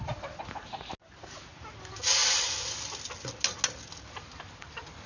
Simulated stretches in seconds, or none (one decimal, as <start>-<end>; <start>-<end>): none